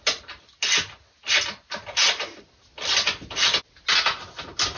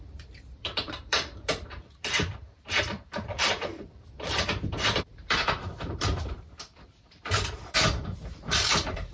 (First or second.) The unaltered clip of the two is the first